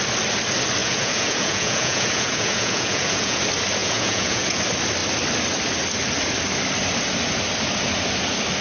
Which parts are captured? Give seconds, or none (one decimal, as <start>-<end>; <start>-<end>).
0.0-0.8; 3.4-3.8; 4.6-8.6